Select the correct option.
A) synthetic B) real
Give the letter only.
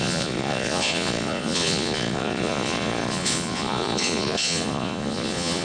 A